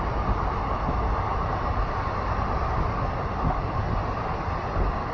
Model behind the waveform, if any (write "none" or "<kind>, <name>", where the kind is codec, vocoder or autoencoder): none